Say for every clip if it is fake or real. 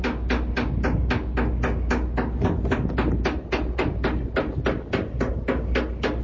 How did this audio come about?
real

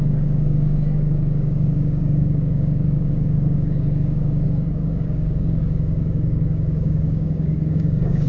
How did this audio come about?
fake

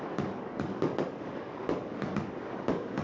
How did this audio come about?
fake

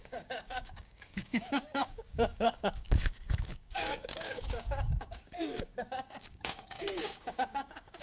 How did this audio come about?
fake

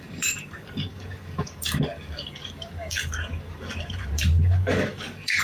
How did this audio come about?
fake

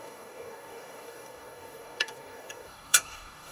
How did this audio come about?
fake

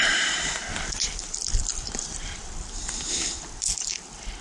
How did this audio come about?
real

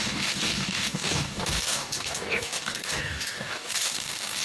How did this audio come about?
fake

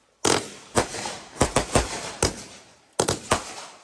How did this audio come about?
real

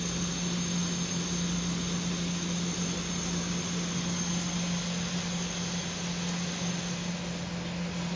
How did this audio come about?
real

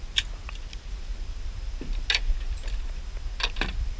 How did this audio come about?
real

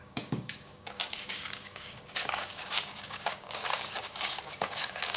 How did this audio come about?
fake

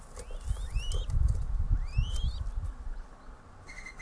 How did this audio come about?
real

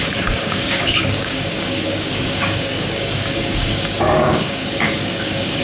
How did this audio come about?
fake